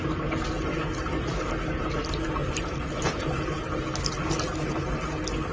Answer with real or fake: real